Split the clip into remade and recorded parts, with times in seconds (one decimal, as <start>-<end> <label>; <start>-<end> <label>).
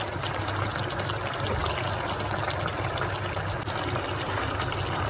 0.0-5.1 recorded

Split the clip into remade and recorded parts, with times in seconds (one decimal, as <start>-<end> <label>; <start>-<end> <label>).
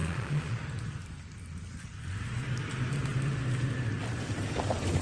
0.0-0.6 remade; 0.6-5.0 recorded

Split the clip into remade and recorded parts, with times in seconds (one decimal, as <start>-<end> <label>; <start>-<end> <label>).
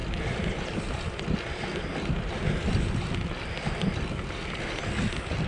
0.0-5.5 recorded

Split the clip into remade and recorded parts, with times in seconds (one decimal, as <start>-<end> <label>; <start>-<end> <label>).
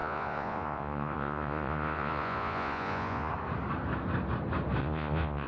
0.0-3.3 remade; 3.3-4.8 recorded; 4.8-5.5 remade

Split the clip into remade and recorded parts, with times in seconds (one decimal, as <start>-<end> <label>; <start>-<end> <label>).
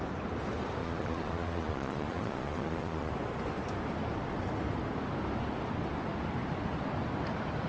0.0-0.8 recorded; 0.8-3.1 remade; 3.1-7.7 recorded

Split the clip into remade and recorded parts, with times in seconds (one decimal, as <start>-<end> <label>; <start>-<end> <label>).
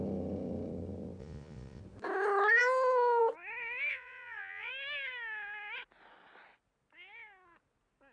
0.0-1.2 recorded; 1.2-1.8 remade; 1.8-3.9 recorded; 3.9-4.7 remade; 4.7-8.1 recorded